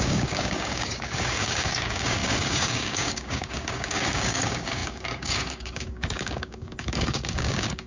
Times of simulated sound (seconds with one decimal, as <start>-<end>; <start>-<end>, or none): 0.0-7.9